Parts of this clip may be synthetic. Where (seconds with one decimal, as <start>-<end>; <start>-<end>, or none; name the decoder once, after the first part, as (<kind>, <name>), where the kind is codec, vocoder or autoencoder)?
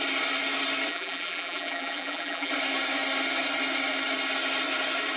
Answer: 0.9-2.5 (vocoder, BigVGAN v2)